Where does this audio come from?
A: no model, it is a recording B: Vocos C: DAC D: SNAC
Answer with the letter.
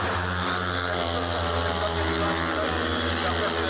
A